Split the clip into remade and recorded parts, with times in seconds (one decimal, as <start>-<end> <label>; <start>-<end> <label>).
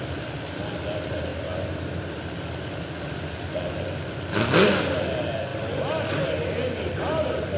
0.0-7.6 recorded